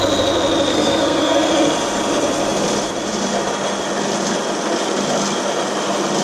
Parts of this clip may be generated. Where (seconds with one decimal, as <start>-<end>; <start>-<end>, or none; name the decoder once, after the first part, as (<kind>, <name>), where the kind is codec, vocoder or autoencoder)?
0.7-1.5 (codec, SNAC)